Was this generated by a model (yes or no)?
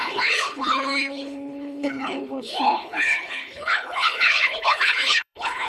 yes